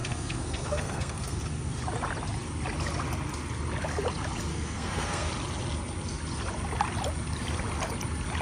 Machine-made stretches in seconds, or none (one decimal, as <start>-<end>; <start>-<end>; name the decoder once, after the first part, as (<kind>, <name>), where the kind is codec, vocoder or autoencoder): 0.0-1.4 (codec, SNAC); 4.5-5.3